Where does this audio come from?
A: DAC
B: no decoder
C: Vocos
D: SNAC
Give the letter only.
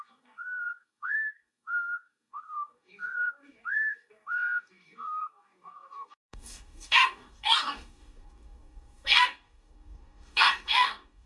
A